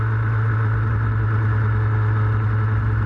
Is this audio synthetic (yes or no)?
no